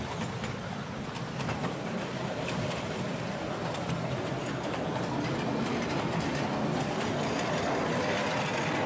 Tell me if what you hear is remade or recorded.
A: recorded